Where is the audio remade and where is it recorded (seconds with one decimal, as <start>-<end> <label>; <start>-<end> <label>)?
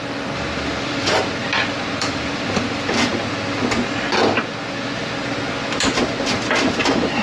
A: 0.0-1.4 remade; 1.4-2.0 recorded; 2.0-3.1 remade; 3.1-6.8 recorded; 6.8-7.2 remade